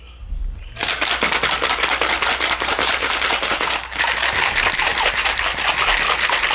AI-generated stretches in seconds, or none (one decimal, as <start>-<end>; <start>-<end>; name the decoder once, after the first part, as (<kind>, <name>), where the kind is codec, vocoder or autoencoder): 2.3-5.7 (vocoder, BigVGAN v2)